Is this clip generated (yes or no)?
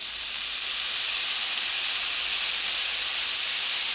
no